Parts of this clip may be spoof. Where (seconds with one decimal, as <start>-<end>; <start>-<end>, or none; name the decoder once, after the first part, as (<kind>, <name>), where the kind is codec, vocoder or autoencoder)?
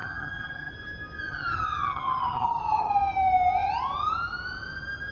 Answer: 0.0-0.7 (vocoder, HiFi-GAN); 1.3-2.9